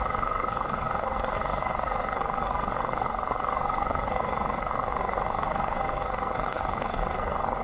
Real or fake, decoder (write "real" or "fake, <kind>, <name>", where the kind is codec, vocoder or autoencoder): fake, codec, SNAC